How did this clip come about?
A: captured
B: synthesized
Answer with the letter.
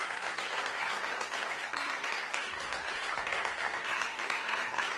B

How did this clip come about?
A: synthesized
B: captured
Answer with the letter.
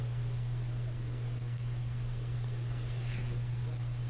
A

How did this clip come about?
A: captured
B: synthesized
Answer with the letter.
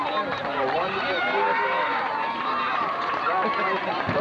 A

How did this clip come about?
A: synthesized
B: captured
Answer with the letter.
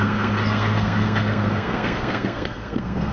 A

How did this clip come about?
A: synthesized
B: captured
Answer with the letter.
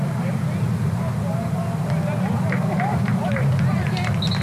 B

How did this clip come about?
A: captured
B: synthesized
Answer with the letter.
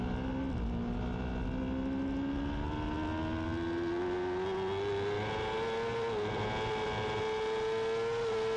A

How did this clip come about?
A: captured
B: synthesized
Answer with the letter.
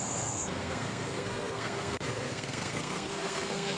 B